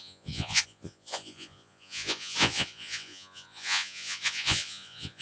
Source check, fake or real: fake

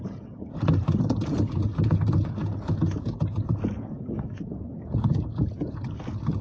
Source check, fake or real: fake